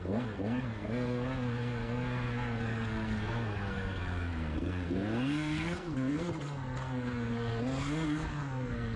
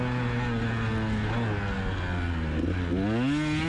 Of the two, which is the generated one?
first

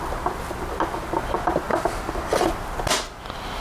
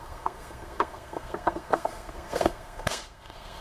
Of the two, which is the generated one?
second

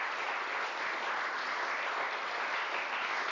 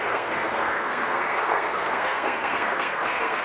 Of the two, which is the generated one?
second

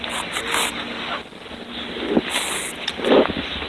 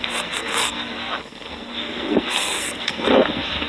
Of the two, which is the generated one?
second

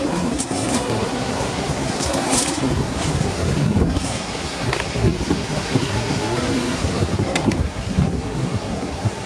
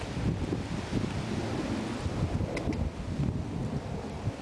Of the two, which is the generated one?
first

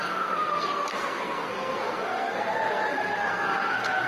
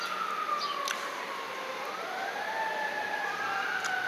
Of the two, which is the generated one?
first